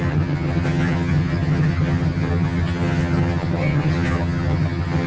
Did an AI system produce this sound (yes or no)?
yes